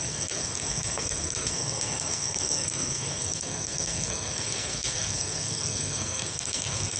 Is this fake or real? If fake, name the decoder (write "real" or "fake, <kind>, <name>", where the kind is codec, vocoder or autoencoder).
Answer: fake, codec, SNAC